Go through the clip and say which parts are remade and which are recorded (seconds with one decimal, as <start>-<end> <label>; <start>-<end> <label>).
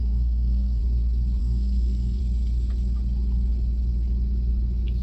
0.0-0.8 remade; 0.8-1.4 recorded; 1.4-2.2 remade; 2.2-5.0 recorded